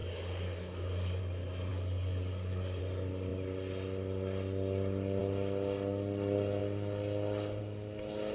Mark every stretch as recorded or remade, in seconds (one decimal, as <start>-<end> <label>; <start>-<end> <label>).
0.0-1.2 remade; 1.2-1.7 recorded; 1.7-2.8 remade; 2.8-8.3 recorded